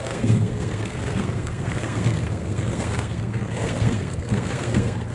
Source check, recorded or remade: remade